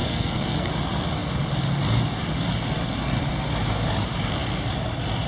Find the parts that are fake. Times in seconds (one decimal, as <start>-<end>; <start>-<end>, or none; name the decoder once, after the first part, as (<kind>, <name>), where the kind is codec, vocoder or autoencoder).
0.0-0.7 (codec, SNAC)